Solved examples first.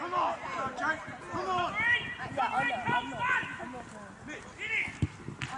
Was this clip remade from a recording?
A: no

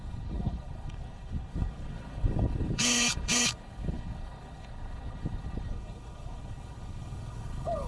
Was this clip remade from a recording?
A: yes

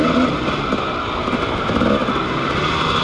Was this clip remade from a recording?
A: no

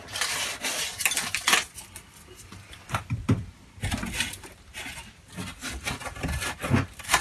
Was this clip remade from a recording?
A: no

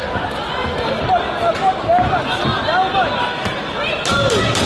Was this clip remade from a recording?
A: no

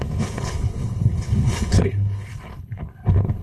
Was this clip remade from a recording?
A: yes